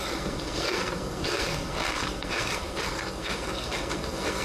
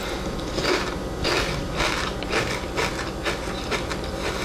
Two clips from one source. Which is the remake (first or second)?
first